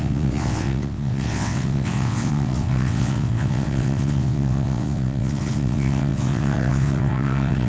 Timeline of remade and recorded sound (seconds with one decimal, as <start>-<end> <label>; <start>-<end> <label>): 0.0-7.7 remade